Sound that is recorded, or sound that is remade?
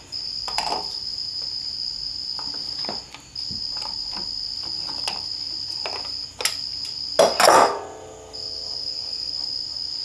recorded